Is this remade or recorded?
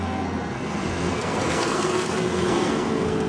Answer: remade